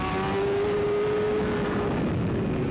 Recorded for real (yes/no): yes